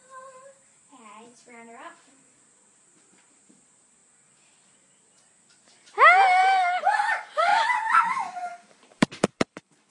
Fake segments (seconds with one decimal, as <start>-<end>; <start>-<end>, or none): 0.0-4.0; 6.4-7.5; 8.0-9.9